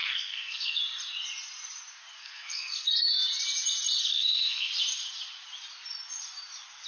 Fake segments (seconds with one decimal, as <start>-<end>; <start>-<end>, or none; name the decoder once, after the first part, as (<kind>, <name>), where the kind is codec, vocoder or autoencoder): 0.0-0.8 (codec, SNAC); 2.2-2.9; 4.0-4.7